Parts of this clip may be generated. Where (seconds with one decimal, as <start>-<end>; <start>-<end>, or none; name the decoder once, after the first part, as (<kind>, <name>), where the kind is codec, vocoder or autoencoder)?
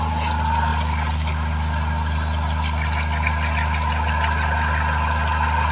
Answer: none